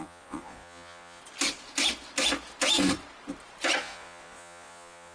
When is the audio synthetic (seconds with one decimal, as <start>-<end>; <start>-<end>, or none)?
0.0-1.2; 3.8-5.1